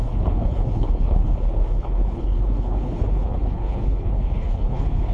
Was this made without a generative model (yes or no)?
no